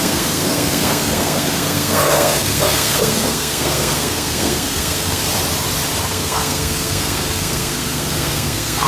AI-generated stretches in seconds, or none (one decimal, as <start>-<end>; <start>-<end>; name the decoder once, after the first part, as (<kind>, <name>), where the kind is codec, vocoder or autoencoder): 0.0-5.2 (codec, SNAC); 6.1-8.9